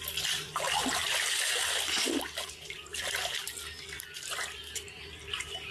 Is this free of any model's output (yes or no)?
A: yes